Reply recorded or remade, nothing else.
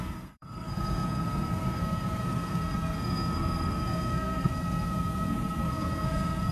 remade